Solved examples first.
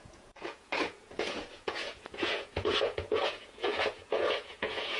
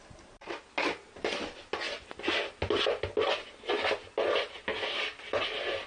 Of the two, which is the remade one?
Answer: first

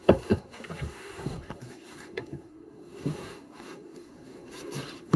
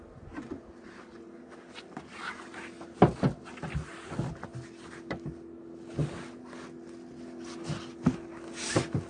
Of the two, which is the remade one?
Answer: first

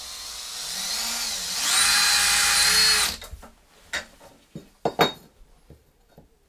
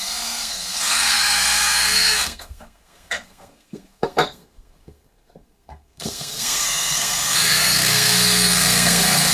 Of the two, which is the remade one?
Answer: second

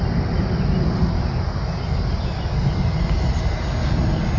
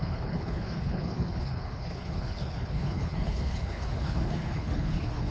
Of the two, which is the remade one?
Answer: second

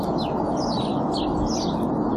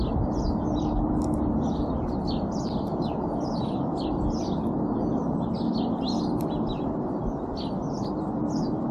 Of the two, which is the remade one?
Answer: second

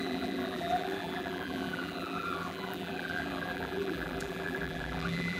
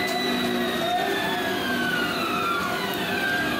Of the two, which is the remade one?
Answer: first